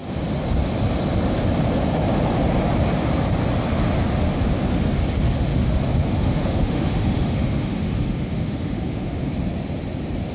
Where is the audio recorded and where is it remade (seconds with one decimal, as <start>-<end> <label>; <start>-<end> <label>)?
0.0-5.5 recorded; 5.5-9.3 remade; 9.3-10.3 recorded